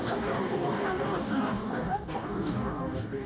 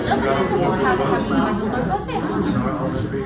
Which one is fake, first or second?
first